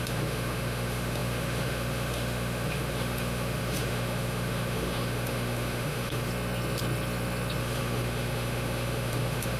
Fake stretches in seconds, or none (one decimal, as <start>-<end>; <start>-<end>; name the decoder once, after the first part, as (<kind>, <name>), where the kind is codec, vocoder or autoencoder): 0.0-6.3 (autoencoder, DAC-VAE); 7.6-9.6